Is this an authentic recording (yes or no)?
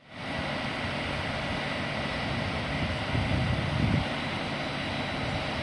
yes